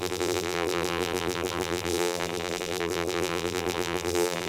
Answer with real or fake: fake